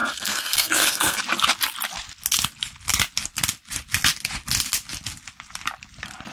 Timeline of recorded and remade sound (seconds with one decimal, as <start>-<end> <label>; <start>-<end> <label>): 0.0-1.2 remade; 1.2-6.3 recorded